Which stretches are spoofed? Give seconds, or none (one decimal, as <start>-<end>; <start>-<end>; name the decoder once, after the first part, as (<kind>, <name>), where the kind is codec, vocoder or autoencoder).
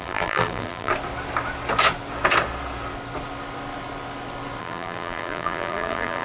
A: 0.0-0.9 (vocoder, BigVGAN v2); 4.6-6.2